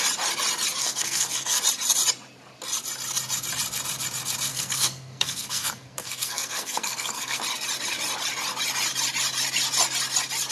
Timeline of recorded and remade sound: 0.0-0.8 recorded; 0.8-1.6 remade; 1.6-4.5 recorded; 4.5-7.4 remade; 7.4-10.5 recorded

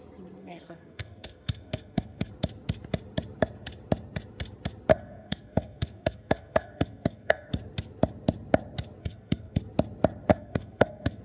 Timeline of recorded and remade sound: 0.0-0.4 recorded; 0.4-2.3 remade; 2.3-4.9 recorded; 4.9-7.5 remade; 7.5-9.0 recorded; 9.0-9.6 remade; 9.6-10.3 recorded; 10.3-11.2 remade

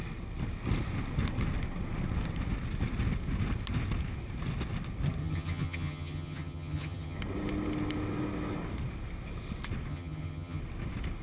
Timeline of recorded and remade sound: 0.0-5.2 recorded; 5.2-7.2 remade; 7.2-9.9 recorded; 9.9-10.6 remade; 10.6-11.2 recorded

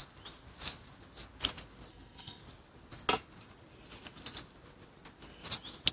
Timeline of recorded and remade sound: 0.0-1.9 recorded; 1.9-2.4 remade; 2.4-5.9 recorded

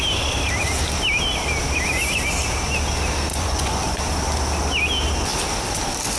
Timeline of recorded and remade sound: 0.0-3.3 recorded; 3.3-4.0 remade; 4.0-6.2 recorded

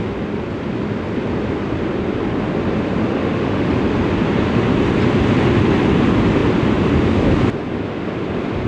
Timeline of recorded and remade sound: 0.0-3.1 recorded; 3.1-3.7 remade; 3.7-8.7 recorded